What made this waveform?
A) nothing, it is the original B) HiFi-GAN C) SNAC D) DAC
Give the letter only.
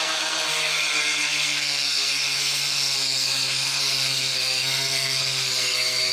C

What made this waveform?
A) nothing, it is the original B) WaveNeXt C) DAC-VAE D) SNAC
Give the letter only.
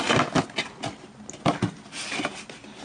A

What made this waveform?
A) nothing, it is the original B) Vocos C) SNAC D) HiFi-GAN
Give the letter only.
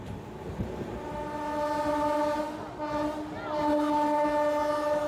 A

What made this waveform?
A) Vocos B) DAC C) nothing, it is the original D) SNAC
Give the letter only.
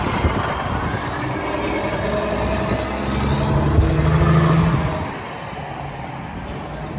C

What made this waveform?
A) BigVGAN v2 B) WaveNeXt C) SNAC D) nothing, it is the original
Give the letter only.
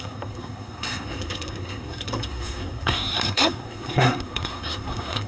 C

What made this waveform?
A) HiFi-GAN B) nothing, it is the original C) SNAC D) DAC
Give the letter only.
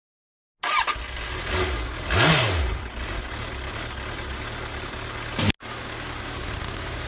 B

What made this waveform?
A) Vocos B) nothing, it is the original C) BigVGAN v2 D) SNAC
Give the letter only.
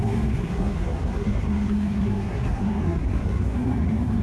D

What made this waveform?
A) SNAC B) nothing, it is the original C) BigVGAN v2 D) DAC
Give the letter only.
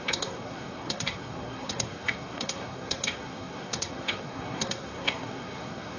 A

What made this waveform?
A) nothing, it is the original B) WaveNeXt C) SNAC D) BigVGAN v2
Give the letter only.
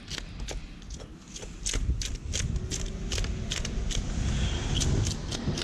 A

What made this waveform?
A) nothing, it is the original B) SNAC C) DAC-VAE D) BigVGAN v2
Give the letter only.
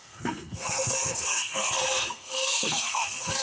B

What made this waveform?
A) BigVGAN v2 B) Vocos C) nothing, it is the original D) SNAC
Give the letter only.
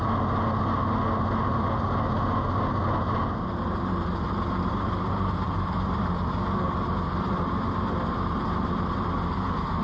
C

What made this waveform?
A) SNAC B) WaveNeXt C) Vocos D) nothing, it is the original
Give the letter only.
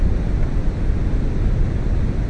D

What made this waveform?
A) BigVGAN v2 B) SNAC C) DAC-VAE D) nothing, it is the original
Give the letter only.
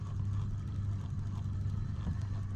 D